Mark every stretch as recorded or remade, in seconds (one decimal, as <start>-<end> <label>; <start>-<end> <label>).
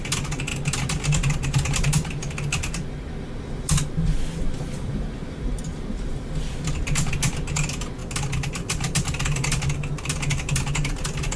0.0-11.4 recorded